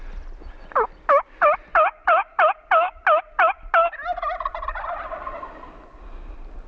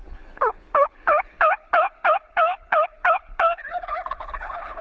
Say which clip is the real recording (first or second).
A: first